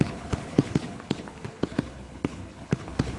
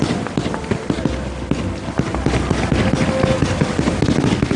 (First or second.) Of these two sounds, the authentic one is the second